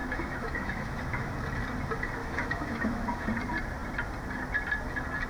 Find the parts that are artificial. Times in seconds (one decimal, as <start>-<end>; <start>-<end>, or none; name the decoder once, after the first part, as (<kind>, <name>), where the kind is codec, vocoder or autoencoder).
0.0-1.3 (autoencoder, DAC-VAE); 2.2-3.3